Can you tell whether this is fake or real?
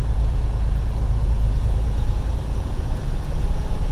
fake